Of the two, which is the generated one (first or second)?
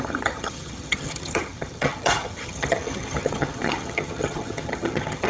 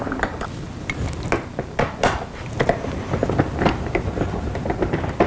first